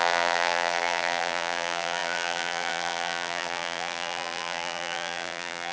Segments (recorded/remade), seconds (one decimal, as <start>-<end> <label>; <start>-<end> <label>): 0.0-5.7 remade